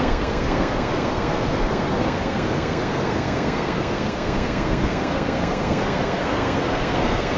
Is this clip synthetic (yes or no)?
yes